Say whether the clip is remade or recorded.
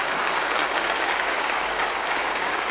remade